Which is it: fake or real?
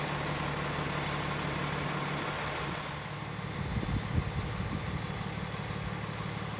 real